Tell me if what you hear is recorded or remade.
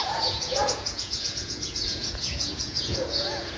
remade